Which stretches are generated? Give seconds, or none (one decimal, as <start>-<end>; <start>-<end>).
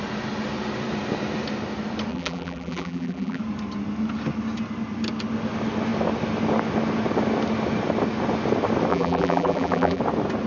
2.1-3.4; 8.9-10.0